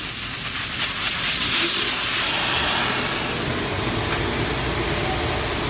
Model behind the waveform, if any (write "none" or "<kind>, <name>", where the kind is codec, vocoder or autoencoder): none